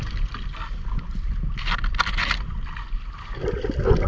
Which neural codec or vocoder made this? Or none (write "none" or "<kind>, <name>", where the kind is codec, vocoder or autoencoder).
none